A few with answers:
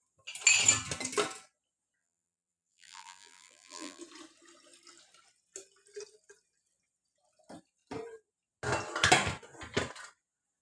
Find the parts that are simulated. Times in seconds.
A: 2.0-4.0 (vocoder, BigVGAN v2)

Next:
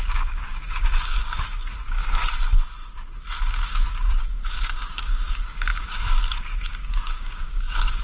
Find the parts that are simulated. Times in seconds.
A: 0.0-2.2 (codec, DAC); 3.5-8.0

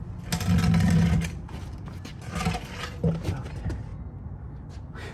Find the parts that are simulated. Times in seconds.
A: none

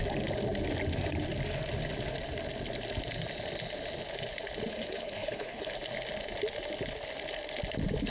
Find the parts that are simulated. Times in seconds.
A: 4.7-5.7 (codec, HILCodec)